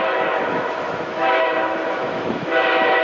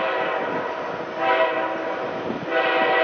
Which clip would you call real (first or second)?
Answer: second